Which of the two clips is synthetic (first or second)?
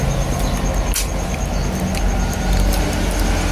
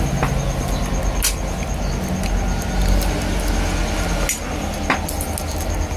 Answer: first